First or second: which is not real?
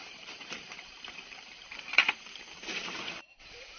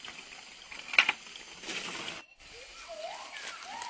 first